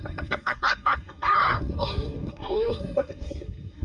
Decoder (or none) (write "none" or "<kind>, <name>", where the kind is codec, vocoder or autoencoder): codec, SNAC